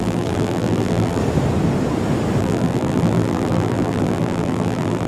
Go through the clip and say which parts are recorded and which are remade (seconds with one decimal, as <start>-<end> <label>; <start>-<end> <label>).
0.0-1.2 remade; 1.2-2.4 recorded; 2.4-5.1 remade